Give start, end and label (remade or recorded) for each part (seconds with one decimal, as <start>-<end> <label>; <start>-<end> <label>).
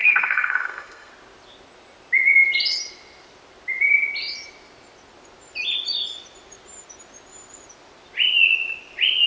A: 0.0-1.1 remade; 1.1-9.3 recorded